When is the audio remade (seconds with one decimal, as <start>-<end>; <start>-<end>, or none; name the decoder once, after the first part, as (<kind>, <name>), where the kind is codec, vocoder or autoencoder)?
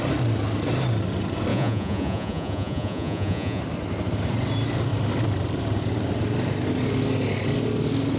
1.5-3.6 (vocoder, Vocos)